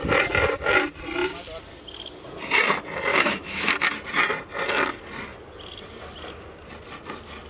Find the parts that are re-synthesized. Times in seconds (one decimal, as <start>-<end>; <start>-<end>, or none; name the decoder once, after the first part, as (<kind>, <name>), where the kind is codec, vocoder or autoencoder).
3.1-3.7 (autoencoder, DAC-VAE)